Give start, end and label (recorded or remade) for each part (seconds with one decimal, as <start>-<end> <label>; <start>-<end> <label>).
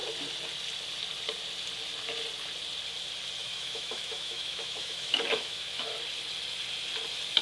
0.0-3.4 recorded; 3.4-5.9 remade; 5.9-7.4 recorded